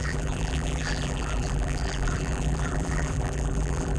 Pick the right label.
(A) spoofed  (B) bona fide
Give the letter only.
A